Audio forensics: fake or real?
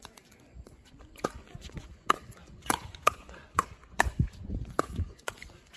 fake